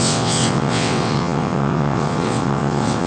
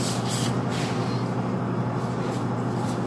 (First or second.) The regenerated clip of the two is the first